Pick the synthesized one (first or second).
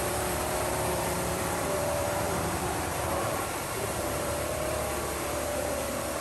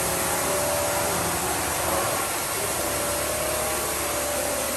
first